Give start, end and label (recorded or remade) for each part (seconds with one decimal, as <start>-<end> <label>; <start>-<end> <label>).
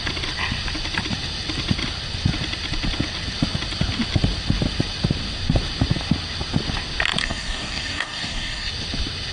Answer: 0.0-7.2 recorded; 7.2-8.7 remade; 8.7-9.3 recorded